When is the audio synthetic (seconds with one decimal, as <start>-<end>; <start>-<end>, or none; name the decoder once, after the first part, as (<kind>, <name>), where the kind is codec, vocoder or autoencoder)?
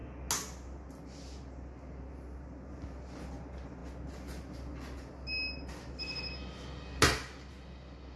none